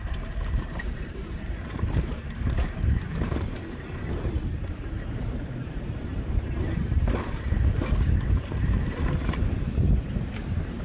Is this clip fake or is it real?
fake